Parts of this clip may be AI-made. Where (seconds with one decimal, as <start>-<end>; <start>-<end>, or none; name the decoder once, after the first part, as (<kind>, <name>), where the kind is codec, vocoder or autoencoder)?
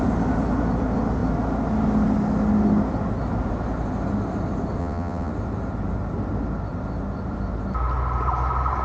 4.8-5.3 (vocoder, WaveNeXt)